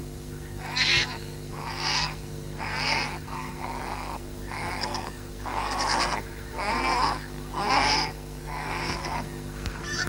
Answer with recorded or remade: remade